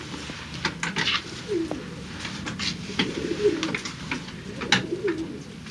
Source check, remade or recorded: recorded